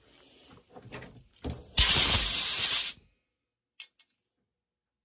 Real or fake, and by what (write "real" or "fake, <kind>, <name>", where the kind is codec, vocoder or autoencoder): real